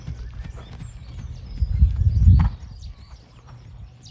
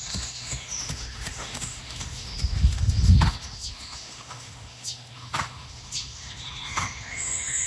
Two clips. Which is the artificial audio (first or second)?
second